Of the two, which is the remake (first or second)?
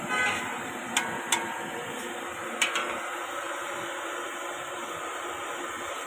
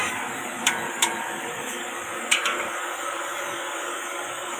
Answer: second